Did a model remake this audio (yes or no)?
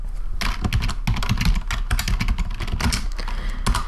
no